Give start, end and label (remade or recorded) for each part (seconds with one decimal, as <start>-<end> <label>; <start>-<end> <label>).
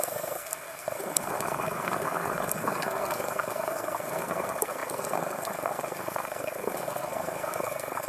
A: 0.0-8.1 remade